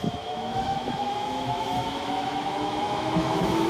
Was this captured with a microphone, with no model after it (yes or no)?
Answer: no